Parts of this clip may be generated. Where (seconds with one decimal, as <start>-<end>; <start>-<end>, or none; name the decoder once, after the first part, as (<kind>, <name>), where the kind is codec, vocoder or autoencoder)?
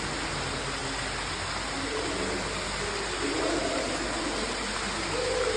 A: none